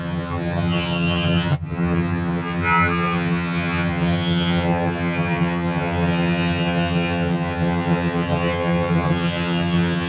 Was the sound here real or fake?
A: fake